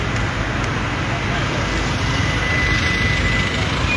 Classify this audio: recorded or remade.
recorded